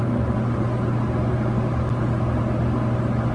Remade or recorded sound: recorded